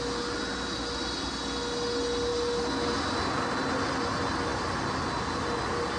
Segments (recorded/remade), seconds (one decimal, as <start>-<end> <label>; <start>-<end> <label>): 0.0-6.0 recorded